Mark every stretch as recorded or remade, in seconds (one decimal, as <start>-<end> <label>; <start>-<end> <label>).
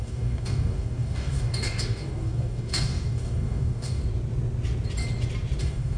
0.0-4.0 remade; 4.0-5.6 recorded; 5.6-6.0 remade